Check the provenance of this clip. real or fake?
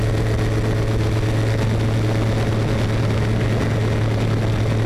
real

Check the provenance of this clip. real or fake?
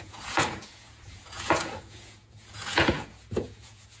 fake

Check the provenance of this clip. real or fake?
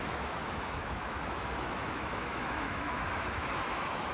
fake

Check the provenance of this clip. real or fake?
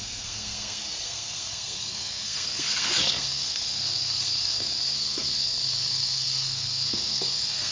fake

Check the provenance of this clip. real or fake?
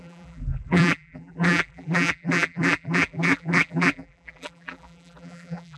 fake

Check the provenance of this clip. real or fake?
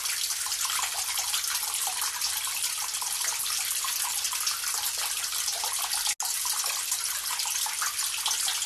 real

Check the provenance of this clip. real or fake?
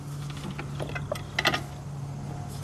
real